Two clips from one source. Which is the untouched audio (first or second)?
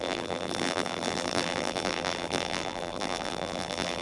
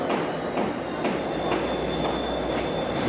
second